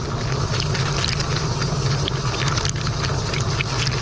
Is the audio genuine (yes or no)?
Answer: yes